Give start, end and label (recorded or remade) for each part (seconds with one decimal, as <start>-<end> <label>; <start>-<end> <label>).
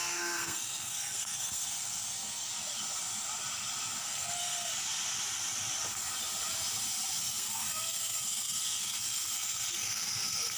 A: 0.0-2.5 remade; 2.5-4.0 recorded; 4.0-4.7 remade; 4.7-7.2 recorded; 7.2-10.6 remade